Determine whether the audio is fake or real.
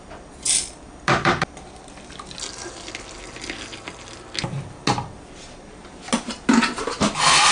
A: real